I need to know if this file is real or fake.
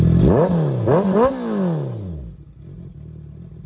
real